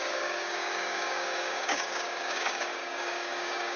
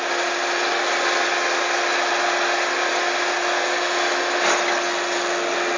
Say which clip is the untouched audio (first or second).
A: second